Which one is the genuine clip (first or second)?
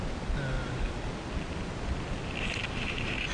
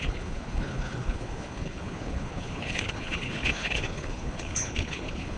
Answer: first